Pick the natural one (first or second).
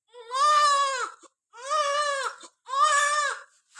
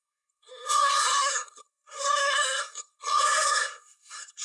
first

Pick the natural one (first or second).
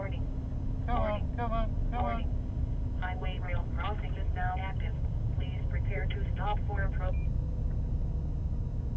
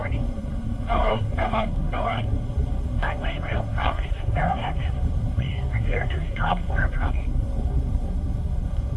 first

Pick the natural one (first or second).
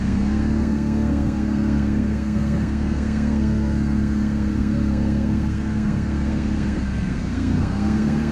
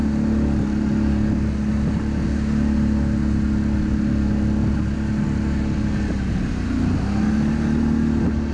second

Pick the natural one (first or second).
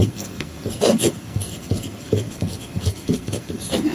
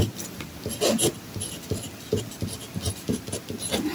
second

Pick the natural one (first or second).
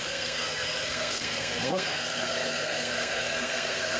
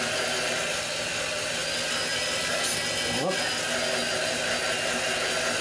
second